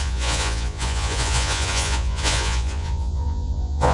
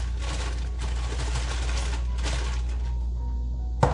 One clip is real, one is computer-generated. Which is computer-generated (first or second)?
first